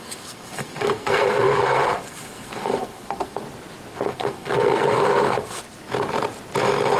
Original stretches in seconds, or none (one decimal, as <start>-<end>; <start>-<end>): 3.4-3.9; 5.6-7.0